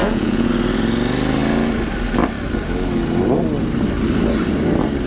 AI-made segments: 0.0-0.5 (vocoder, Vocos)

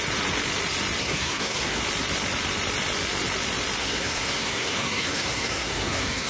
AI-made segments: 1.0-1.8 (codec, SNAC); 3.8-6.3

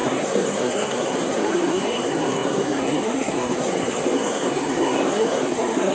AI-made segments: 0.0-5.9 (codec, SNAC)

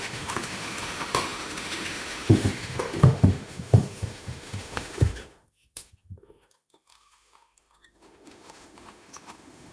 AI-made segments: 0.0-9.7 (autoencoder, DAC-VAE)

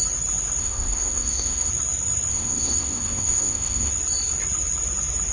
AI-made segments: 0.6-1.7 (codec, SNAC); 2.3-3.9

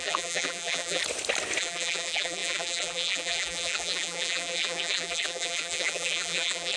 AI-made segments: 0.0-1.0 (vocoder, BigVGAN v2); 1.6-6.8

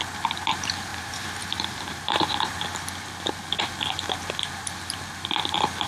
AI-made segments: 0.9-2.3 (vocoder, BigVGAN v2)